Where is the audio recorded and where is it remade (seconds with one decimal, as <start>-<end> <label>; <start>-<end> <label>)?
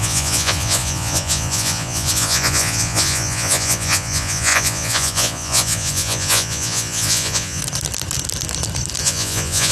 0.0-7.6 remade; 7.6-9.0 recorded; 9.0-9.7 remade